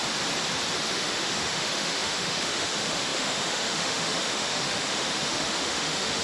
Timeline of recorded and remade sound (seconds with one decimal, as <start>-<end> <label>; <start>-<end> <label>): 0.0-0.8 recorded; 0.8-6.2 remade